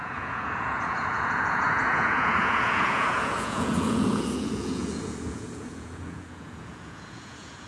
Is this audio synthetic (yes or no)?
yes